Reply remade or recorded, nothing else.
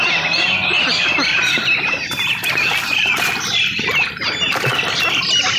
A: remade